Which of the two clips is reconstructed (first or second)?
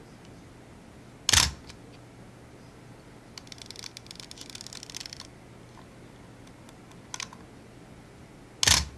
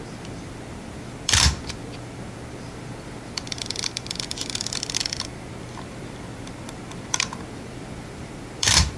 second